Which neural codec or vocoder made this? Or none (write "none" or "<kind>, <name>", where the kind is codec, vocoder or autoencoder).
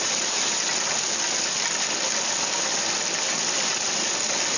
none